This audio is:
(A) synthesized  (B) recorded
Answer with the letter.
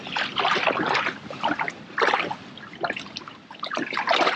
B